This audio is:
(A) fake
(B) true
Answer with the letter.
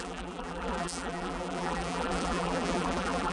A